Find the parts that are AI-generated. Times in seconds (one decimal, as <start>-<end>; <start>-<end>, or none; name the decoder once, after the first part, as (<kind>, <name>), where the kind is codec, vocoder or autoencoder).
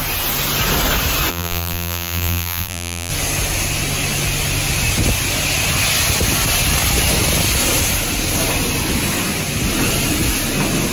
1.3-3.1 (vocoder, BigVGAN v2)